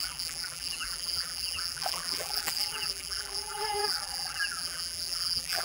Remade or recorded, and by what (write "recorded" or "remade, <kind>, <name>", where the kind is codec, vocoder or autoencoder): remade, vocoder, BigVGAN v2